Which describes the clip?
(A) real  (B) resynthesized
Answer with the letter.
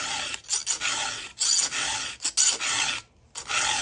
A